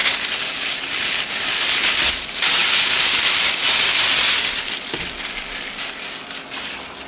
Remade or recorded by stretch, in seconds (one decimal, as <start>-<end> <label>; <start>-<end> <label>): 0.0-7.1 recorded